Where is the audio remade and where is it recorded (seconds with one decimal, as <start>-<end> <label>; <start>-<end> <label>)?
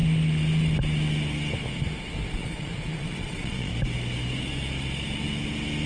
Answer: 0.0-2.3 recorded; 2.3-3.7 remade; 3.7-5.9 recorded